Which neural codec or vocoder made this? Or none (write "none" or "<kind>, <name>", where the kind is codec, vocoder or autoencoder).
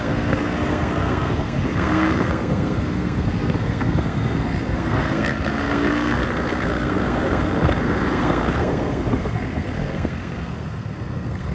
codec, SNAC